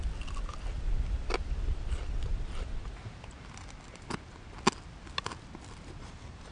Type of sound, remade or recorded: recorded